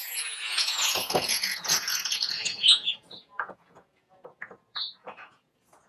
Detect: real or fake fake